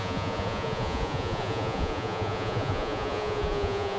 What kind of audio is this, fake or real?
fake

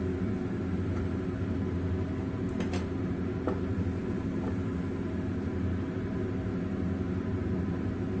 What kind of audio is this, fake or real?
real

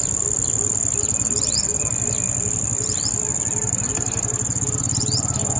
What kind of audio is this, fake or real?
real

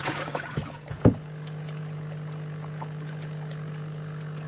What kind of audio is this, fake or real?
fake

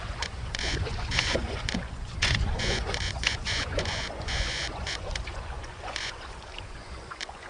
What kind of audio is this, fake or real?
fake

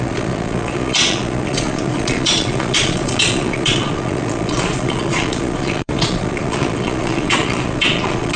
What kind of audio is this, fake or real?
fake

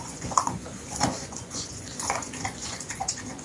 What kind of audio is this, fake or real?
fake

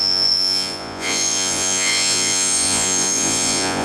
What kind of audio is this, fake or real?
fake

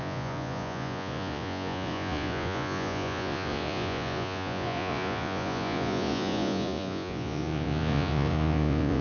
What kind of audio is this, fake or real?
fake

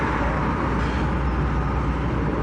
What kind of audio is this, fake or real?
real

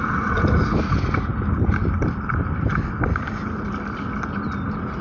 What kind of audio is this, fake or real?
real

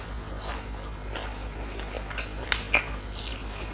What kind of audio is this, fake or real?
real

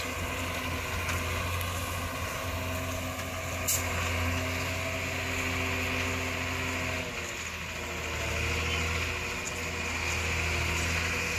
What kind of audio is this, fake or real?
real